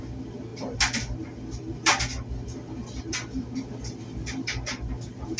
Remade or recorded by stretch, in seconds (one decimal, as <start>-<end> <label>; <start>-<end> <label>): 0.0-5.4 recorded

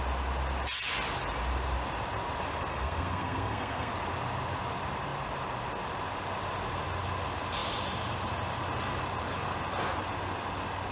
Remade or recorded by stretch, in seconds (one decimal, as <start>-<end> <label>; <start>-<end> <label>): 0.0-2.7 recorded; 2.7-3.9 remade; 3.9-10.9 recorded

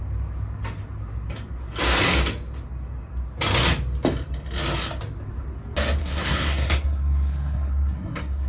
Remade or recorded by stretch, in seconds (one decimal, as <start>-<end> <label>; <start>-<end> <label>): 0.0-6.0 recorded; 6.0-8.5 remade

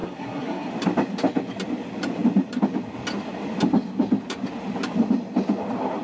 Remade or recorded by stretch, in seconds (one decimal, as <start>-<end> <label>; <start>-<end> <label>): 0.0-0.7 remade; 0.7-6.0 recorded

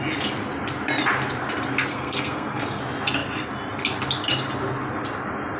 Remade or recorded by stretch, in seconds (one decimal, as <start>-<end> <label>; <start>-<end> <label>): 0.0-1.9 recorded; 1.9-2.8 remade; 2.8-5.6 recorded